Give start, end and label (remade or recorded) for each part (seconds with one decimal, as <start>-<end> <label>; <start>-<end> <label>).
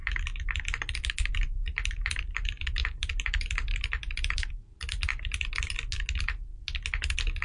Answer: 0.0-2.8 recorded; 2.8-4.5 remade; 4.5-5.1 recorded; 5.1-5.7 remade; 5.7-7.4 recorded